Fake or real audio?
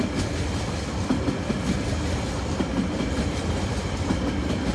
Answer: real